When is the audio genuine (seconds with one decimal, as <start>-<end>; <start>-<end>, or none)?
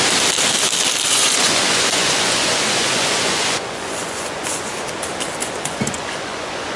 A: 0.0-1.1; 4.7-5.4